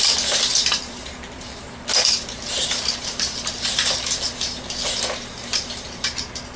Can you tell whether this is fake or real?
fake